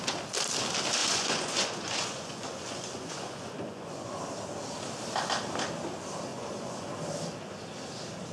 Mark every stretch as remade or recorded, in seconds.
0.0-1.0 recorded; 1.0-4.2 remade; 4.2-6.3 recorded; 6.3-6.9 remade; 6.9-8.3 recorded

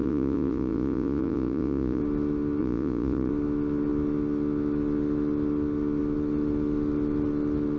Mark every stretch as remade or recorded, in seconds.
0.0-2.0 remade; 2.0-2.6 recorded; 2.6-3.3 remade; 3.3-7.8 recorded